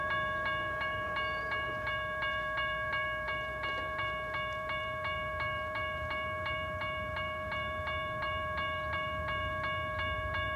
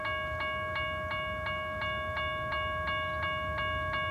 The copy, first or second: first